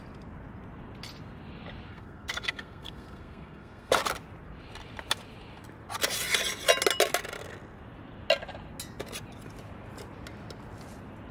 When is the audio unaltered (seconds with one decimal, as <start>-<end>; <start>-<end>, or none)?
0.0-1.9; 3.9-11.3